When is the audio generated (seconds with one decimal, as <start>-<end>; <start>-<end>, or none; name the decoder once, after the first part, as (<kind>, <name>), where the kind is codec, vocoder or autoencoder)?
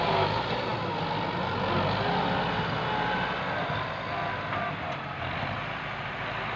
none